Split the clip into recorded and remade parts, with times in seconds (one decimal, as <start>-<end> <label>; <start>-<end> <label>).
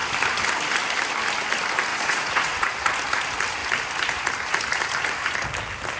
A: 0.0-1.9 recorded; 1.9-2.7 remade; 2.7-6.0 recorded